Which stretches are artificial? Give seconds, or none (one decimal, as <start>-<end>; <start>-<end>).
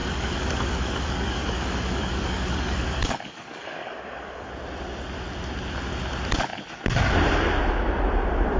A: 0.0-4.5